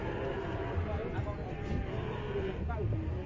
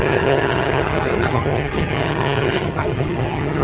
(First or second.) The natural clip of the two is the first